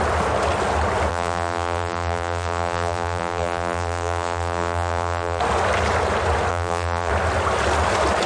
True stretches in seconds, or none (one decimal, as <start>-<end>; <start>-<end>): 0.0-1.1; 5.4-6.5; 7.1-8.3